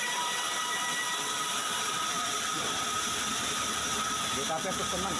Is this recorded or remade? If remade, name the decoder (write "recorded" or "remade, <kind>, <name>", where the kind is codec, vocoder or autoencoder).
remade, vocoder, BigVGAN v2